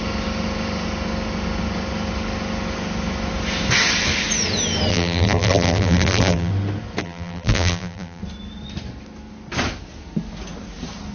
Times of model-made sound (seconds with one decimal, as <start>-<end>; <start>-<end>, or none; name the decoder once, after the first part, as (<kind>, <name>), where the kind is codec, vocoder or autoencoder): 4.9-6.5 (vocoder, BigVGAN v2); 7.0-8.2